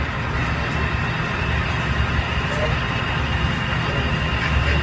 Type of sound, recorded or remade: recorded